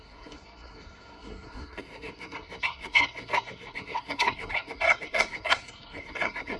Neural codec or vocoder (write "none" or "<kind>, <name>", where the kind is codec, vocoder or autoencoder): codec, SNAC